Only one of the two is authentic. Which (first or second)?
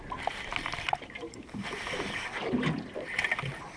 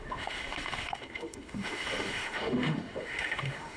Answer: first